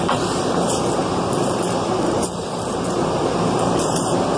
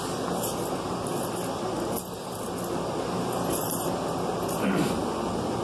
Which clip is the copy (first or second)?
first